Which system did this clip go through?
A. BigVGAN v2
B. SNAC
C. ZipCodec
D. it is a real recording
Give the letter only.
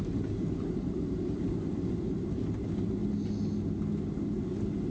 D